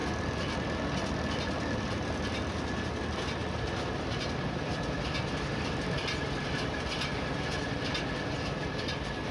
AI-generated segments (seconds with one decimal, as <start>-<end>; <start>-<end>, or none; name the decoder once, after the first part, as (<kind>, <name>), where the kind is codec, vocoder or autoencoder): none